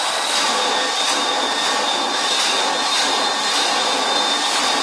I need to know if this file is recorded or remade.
recorded